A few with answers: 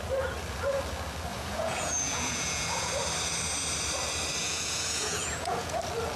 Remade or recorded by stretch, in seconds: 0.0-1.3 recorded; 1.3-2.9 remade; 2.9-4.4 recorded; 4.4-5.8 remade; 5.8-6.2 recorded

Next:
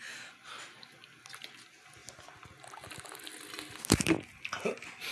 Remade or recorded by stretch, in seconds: 0.0-5.1 recorded